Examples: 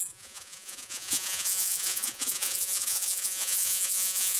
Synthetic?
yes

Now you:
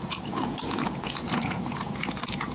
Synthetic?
yes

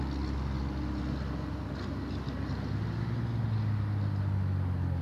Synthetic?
no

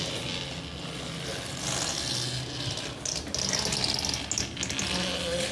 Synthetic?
no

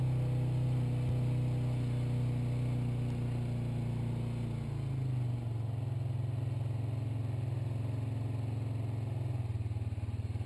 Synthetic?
no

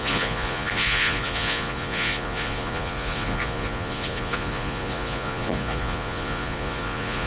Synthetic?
yes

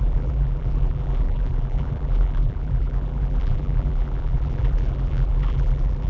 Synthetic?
yes